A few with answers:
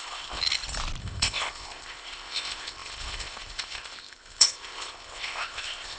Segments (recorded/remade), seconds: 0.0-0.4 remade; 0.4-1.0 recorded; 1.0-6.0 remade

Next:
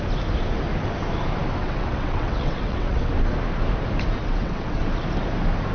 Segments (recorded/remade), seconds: 0.0-1.6 recorded; 1.6-3.1 remade; 3.1-4.2 recorded; 4.2-4.8 remade; 4.8-5.7 recorded

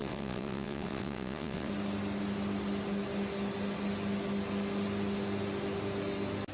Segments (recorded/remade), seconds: 0.0-1.7 remade; 1.7-6.5 recorded

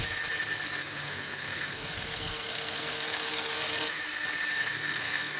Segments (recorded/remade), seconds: 0.0-0.8 recorded; 0.8-4.0 remade; 4.0-4.5 recorded; 4.5-5.4 remade